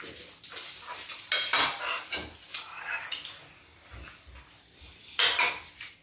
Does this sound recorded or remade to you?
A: recorded